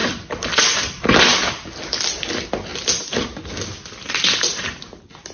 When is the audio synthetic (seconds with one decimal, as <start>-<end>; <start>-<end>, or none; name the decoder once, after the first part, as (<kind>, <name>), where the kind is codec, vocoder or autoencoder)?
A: none